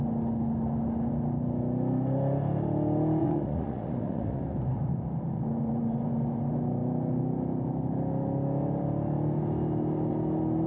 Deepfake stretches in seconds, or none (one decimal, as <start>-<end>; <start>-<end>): 3.2-4.4